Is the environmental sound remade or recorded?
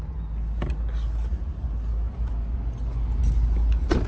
recorded